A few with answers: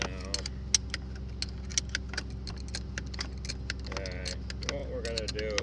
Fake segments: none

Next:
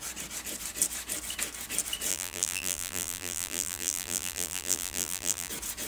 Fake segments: 2.1-5.5 (vocoder, BigVGAN v2)

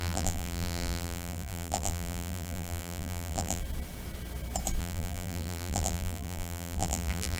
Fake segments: 0.0-3.6 (vocoder, BigVGAN v2); 4.8-7.4

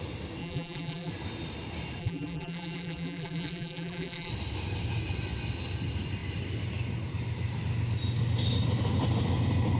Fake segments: 0.4-1.1 (vocoder, BigVGAN v2); 2.0-4.3

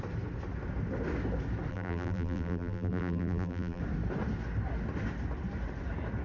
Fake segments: 1.7-3.8 (vocoder, BigVGAN v2)

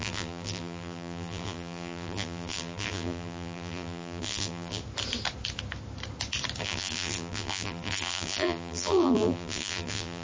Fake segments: 0.0-4.8 (vocoder, BigVGAN v2); 6.6-10.2

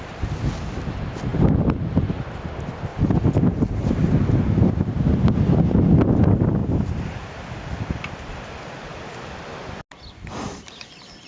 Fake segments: 1.3-2.5 (vocoder, BigVGAN v2); 6.6-8.3

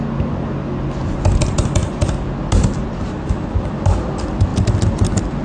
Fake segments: 4.5-5.4 (vocoder, BigVGAN v2)